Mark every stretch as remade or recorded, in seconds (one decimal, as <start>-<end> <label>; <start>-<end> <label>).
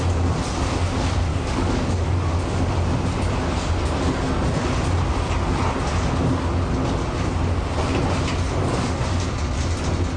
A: 0.0-1.3 recorded; 1.3-2.6 remade; 2.6-8.6 recorded; 8.6-9.3 remade; 9.3-10.2 recorded